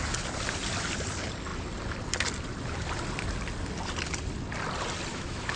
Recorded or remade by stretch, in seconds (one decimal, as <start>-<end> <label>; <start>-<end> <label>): 0.0-5.1 recorded; 5.1-5.6 remade